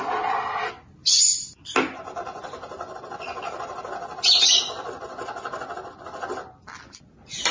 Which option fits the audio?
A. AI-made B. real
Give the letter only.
B